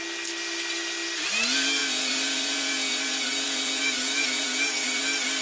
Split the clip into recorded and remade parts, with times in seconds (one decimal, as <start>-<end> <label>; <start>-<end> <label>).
0.0-1.8 recorded; 1.8-5.0 remade; 5.0-5.4 recorded